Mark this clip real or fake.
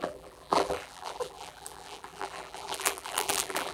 fake